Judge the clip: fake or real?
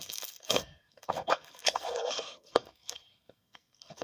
fake